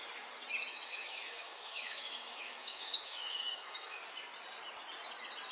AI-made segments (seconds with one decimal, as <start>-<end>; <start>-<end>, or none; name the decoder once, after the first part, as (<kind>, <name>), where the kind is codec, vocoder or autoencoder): 0.7-4.0 (autoencoder, DAC-VAE)